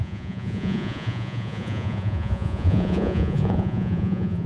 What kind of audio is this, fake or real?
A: fake